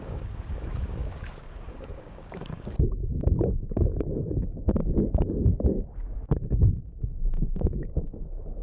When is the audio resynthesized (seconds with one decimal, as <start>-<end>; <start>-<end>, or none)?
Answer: 0.0-4.8; 6.8-8.6